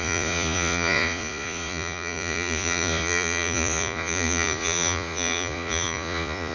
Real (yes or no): no